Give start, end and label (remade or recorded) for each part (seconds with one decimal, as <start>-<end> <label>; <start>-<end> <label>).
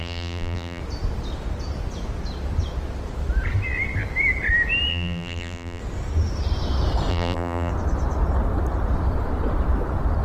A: 0.0-0.8 remade; 0.8-4.9 recorded; 4.9-5.8 remade; 5.8-7.1 recorded; 7.1-7.7 remade; 7.7-10.2 recorded